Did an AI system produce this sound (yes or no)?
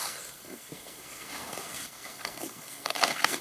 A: yes